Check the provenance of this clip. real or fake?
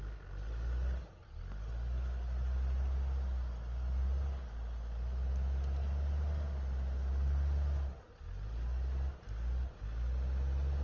real